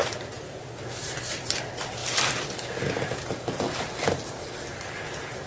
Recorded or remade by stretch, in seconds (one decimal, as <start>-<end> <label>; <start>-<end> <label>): 0.0-2.0 remade; 2.0-4.5 recorded; 4.5-5.5 remade